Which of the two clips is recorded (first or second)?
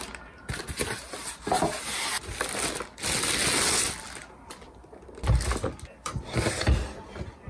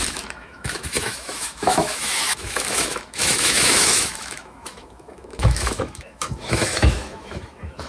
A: first